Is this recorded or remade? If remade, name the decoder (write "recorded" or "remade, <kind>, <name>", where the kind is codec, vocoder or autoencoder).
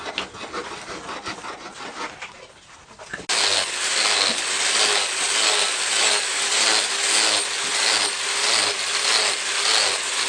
recorded